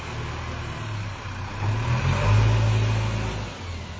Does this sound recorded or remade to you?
recorded